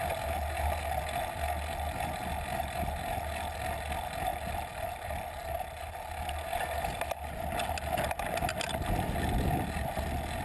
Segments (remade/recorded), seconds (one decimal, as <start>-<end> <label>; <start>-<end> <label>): 0.0-10.4 recorded